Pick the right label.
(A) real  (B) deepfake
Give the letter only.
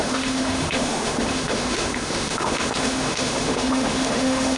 B